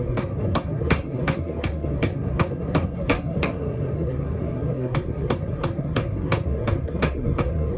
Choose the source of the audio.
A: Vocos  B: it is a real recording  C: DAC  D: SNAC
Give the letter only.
D